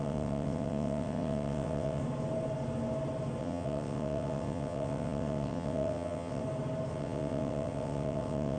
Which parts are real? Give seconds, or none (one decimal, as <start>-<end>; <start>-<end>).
2.0-3.4; 6.4-6.9